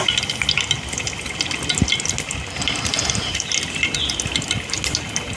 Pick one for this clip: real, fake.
real